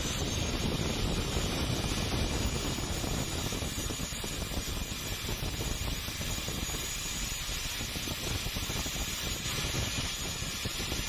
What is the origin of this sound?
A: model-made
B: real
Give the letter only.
B